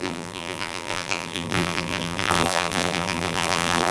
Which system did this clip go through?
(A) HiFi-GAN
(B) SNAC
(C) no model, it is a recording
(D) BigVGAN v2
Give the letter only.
D